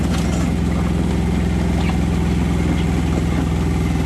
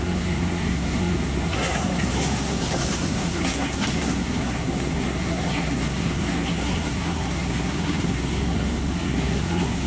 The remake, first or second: second